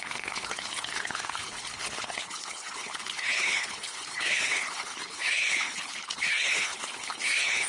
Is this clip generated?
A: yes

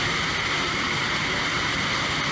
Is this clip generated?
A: no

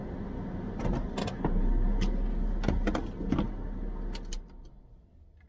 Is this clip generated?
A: no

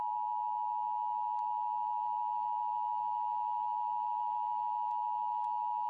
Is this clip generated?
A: yes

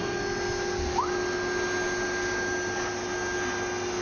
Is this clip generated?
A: no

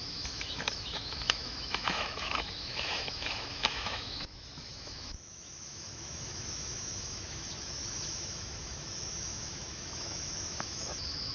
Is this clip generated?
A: yes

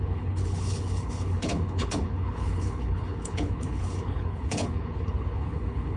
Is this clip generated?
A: yes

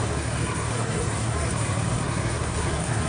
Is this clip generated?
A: yes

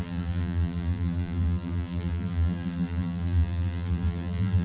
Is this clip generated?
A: yes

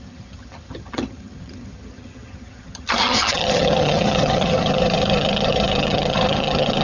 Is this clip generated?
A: yes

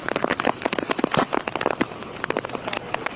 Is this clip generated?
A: no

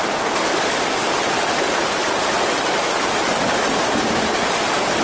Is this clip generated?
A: no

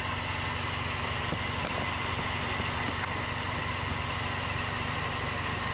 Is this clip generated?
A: no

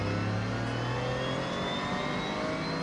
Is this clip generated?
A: no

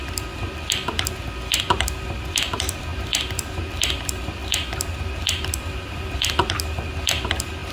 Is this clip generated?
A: no